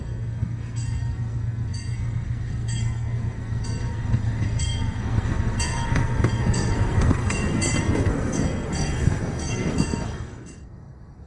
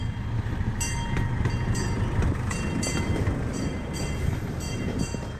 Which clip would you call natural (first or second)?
second